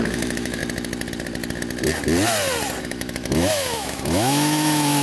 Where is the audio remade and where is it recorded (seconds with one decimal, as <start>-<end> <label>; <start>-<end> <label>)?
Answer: 0.0-0.6 remade; 0.6-2.8 recorded; 2.8-5.0 remade